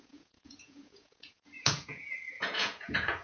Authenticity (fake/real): fake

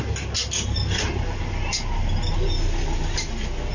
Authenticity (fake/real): real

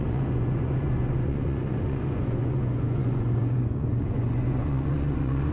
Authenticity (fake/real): fake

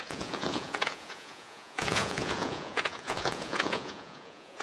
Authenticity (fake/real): fake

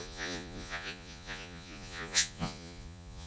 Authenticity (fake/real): fake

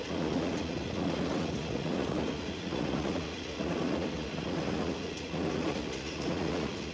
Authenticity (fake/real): fake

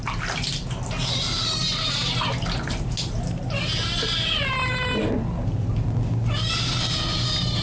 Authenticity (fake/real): real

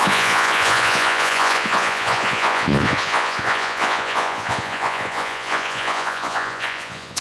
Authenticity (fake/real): fake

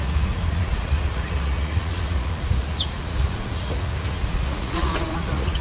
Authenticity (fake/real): fake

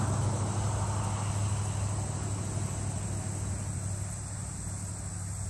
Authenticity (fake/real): real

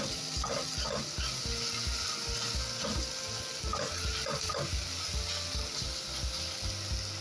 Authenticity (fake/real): real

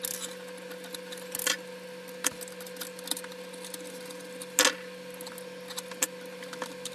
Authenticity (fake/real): real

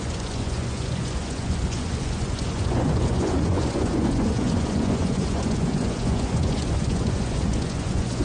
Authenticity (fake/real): fake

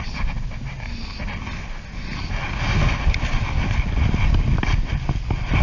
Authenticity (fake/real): real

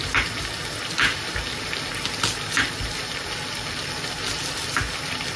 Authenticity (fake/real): real